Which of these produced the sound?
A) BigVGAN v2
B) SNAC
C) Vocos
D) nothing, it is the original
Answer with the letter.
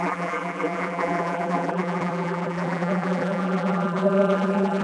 A